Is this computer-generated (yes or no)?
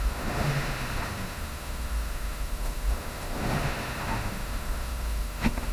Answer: yes